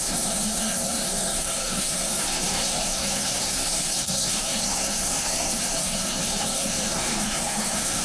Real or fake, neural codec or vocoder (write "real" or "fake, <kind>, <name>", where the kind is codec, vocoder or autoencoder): fake, codec, SNAC